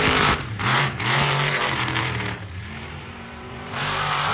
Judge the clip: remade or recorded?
remade